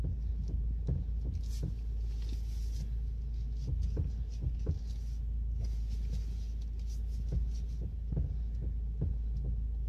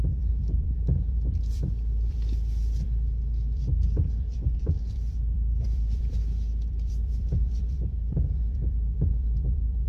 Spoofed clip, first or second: second